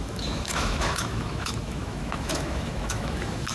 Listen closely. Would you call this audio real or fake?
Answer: fake